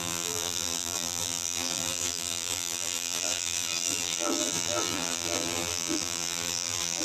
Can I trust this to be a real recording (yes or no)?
no